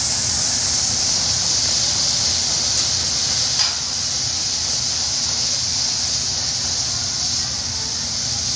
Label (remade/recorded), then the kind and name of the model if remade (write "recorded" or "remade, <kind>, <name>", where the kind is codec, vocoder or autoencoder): recorded